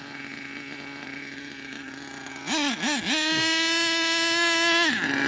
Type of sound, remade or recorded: recorded